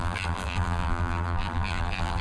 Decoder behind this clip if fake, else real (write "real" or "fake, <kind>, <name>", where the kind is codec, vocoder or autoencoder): fake, vocoder, BigVGAN v2